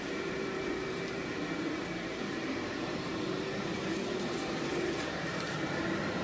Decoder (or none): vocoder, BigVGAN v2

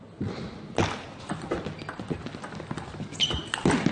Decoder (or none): none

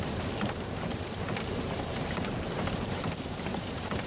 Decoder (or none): vocoder, BigVGAN v2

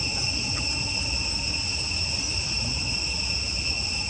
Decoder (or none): none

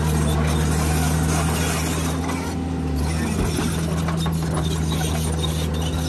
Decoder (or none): none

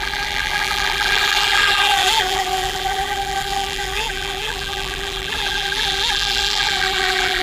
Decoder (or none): vocoder, BigVGAN v2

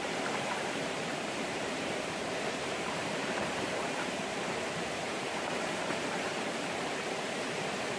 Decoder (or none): vocoder, BigVGAN v2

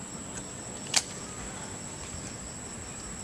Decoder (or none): none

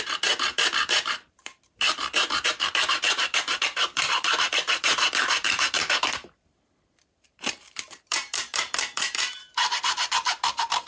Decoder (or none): vocoder, BigVGAN v2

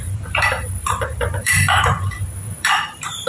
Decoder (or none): vocoder, BigVGAN v2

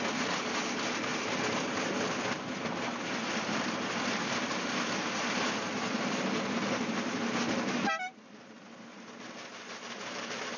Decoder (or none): none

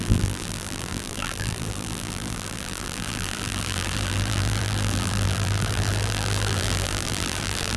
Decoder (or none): vocoder, BigVGAN v2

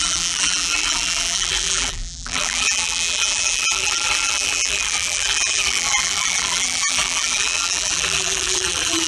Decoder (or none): vocoder, BigVGAN v2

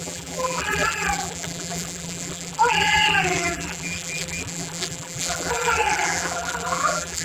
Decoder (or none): vocoder, BigVGAN v2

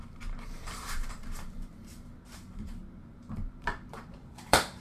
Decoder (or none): vocoder, BigVGAN v2